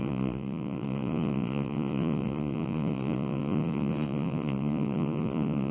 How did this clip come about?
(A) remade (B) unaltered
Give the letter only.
A